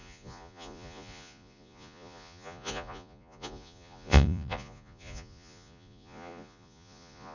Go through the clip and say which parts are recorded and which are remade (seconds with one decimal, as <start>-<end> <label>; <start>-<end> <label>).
0.0-7.3 remade